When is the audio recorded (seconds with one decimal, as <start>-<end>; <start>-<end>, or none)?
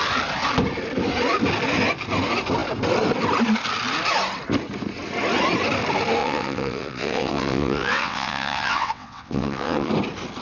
0.0-6.2; 9.9-10.4